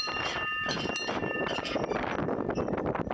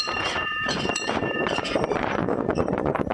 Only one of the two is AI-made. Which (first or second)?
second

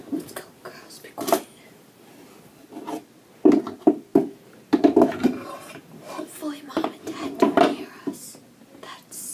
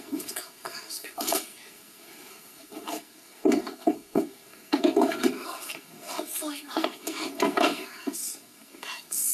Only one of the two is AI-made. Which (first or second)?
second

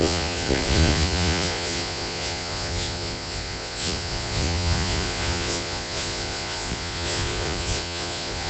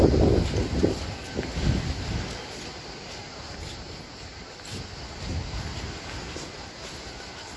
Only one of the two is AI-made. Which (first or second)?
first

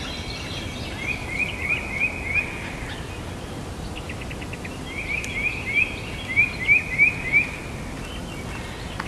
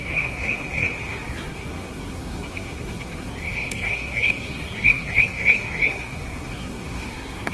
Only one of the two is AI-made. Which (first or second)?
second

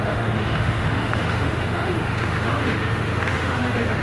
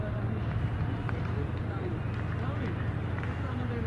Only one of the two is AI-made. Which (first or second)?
first